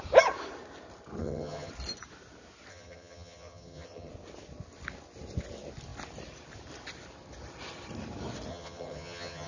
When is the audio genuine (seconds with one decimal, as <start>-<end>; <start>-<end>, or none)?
0.0-1.2; 1.7-2.7; 4.1-8.5